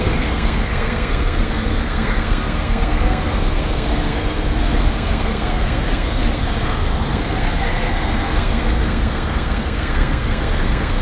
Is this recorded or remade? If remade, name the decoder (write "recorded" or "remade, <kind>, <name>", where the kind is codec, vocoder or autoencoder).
remade, codec, SNAC